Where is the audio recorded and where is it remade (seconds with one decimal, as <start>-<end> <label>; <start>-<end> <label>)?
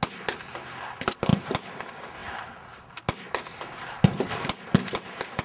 0.0-5.4 recorded